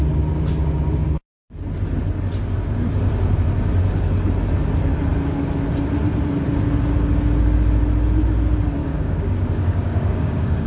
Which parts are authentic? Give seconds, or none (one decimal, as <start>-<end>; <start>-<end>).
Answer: 0.0-1.0; 1.5-8.8